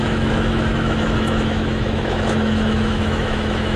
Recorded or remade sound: remade